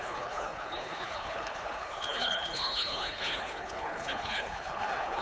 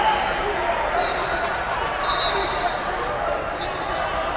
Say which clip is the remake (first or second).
first